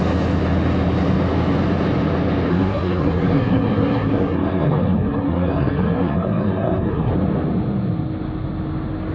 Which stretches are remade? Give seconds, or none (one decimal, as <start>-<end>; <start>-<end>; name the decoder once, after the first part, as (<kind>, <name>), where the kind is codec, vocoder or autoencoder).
2.5-7.1 (codec, SNAC)

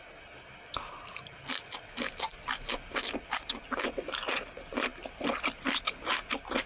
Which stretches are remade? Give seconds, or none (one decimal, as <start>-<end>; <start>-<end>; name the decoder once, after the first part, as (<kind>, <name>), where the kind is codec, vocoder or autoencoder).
none

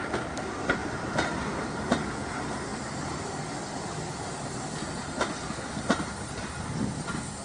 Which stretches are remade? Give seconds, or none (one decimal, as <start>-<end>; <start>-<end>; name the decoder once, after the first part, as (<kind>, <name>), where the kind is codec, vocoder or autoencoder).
none

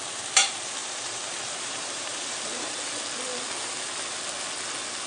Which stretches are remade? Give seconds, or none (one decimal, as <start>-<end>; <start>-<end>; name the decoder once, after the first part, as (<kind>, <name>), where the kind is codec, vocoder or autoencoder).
0.8-2.8 (vocoder, BigVGAN v2)

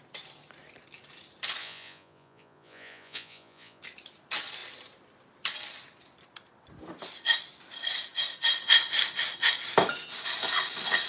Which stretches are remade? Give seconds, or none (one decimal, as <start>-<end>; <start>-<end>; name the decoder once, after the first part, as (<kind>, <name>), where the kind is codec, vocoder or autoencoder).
1.6-3.8 (vocoder, Vocos)

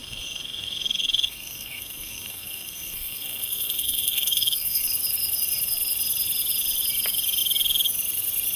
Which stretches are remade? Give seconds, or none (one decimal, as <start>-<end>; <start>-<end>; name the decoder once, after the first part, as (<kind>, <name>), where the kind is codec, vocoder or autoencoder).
0.0-4.8 (codec, SNAC)

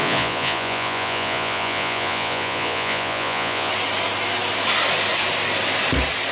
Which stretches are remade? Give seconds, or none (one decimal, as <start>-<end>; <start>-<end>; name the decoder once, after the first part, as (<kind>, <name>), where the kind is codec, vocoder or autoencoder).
0.0-3.7 (vocoder, Vocos)